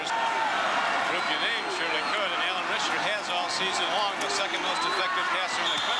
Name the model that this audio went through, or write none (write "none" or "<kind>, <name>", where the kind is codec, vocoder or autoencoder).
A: none